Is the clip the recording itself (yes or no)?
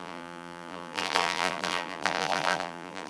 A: no